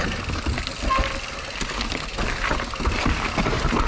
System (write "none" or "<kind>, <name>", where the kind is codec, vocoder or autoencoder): none